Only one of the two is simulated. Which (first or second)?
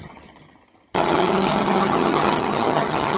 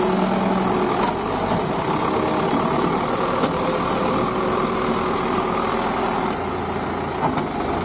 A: first